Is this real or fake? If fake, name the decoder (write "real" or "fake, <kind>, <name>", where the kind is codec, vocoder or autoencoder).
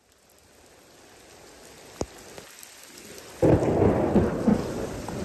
real